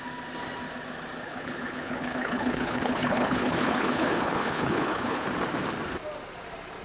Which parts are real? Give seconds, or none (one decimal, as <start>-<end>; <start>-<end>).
0.0-1.2; 5.3-6.8

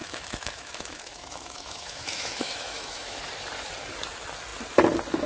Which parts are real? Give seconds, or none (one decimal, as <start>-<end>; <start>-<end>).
3.2-5.3

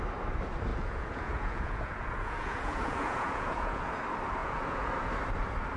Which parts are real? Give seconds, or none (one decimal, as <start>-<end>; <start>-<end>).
0.0-0.7; 3.9-4.4; 4.9-5.8

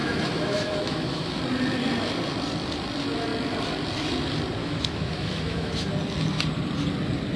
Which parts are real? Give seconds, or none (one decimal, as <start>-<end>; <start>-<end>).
1.4-4.6; 5.9-7.4

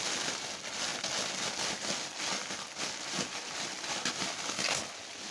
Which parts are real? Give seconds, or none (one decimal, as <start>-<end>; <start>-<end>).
0.0-5.3

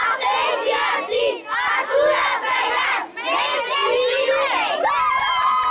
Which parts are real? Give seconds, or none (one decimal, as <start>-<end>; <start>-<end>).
0.0-5.7

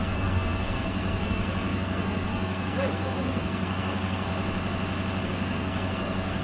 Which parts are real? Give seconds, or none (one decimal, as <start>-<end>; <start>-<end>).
4.3-5.2

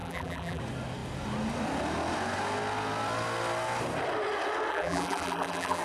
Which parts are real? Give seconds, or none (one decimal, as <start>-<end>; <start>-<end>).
0.6-4.7